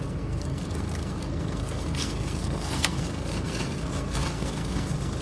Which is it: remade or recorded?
remade